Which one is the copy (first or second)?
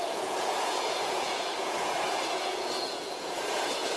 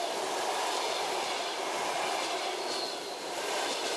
first